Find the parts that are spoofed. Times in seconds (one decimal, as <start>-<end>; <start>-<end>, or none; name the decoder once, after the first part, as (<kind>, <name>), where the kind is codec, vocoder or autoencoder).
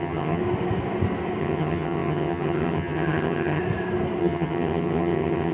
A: 0.0-0.4 (vocoder, HiFi-GAN); 1.4-3.6; 4.2-5.5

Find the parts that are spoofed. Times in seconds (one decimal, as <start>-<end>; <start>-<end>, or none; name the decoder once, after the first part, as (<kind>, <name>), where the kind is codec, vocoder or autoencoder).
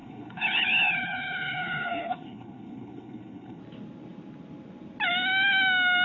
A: 0.0-3.6 (codec, HILCodec)